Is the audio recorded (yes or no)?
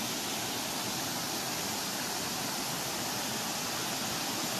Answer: yes